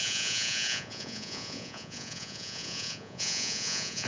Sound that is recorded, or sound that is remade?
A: remade